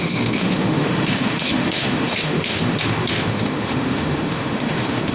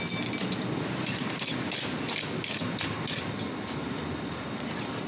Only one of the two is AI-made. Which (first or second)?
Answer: first